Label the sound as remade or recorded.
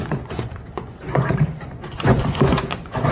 remade